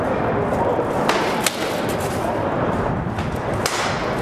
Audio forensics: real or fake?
real